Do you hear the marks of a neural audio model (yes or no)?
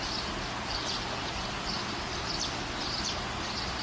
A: no